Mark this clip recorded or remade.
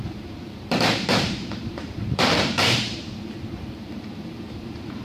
remade